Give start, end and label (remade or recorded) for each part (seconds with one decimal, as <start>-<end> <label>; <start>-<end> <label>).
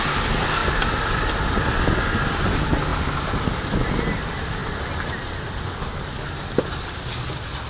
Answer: 0.0-7.7 recorded